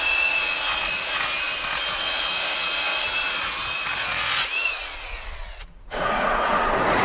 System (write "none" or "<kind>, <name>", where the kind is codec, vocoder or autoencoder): vocoder, Vocos